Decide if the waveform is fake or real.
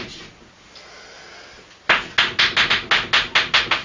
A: real